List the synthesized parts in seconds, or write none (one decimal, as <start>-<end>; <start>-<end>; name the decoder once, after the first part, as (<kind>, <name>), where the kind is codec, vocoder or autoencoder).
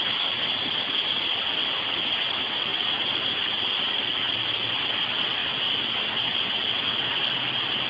none